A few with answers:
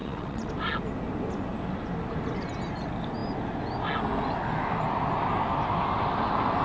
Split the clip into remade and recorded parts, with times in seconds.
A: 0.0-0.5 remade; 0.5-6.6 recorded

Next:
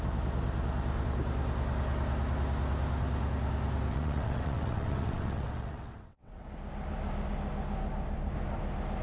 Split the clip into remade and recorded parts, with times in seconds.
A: 0.0-3.9 recorded; 3.9-6.4 remade; 6.4-9.0 recorded